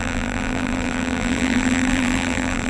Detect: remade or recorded remade